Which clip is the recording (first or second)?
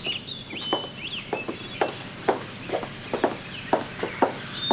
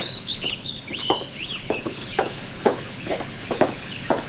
first